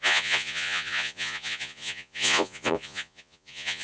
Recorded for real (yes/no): no